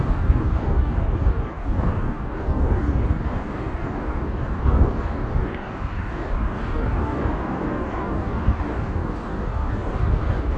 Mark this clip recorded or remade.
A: remade